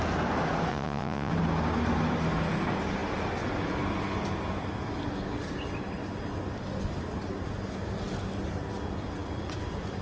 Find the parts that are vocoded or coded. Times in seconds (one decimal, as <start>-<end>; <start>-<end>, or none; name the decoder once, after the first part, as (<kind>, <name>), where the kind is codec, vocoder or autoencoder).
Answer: 0.7-1.3 (vocoder, Vocos)